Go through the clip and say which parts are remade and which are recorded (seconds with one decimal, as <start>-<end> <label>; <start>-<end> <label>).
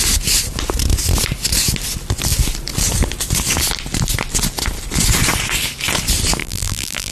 0.0-6.4 recorded; 6.4-7.1 remade